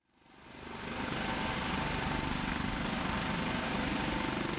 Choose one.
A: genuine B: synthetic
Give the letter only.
A